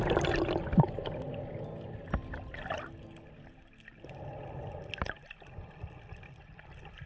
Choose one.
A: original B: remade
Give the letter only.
A